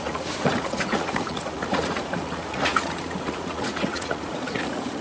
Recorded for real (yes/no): no